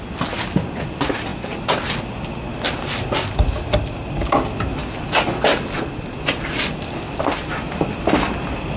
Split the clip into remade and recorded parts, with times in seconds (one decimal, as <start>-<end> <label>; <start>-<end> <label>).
0.0-8.8 recorded